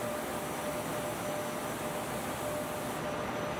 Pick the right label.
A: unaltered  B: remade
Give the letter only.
A